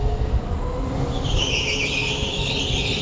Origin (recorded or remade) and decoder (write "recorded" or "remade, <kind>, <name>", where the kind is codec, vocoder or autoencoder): recorded